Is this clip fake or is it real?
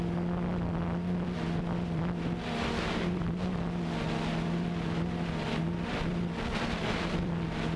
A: real